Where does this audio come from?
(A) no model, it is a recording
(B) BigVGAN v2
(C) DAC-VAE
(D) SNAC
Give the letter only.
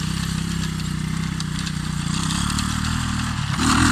A